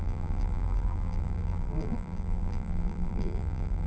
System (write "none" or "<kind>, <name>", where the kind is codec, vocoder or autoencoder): vocoder, BigVGAN v2